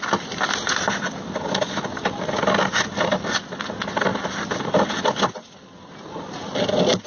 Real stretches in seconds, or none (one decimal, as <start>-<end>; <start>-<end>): 0.0-7.1